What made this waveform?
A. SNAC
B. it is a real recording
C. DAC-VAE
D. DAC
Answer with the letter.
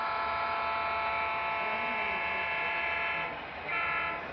B